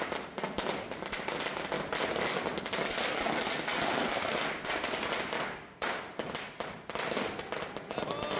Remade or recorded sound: recorded